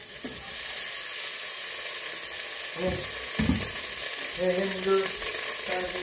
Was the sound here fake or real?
real